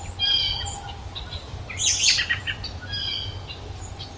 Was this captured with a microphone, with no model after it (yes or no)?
yes